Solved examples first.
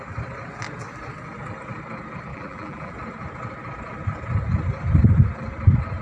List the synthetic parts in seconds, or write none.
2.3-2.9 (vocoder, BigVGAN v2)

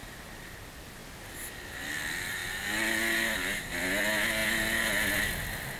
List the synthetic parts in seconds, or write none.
0.5-1.0 (vocoder, BigVGAN v2); 1.9-2.4; 4.0-4.4; 5.3-5.8

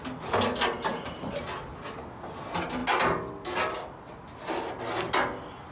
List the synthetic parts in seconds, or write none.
0.9-1.4 (vocoder, BigVGAN v2)

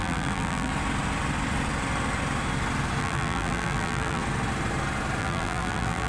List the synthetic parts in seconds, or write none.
0.0-0.7 (vocoder, BigVGAN v2); 3.0-4.2; 5.2-6.1